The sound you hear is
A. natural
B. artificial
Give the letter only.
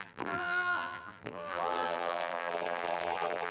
B